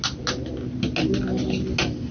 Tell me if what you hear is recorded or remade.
recorded